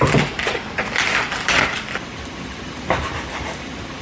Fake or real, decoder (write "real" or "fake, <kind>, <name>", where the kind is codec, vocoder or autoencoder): real